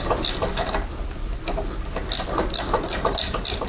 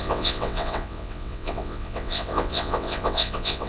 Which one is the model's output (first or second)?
second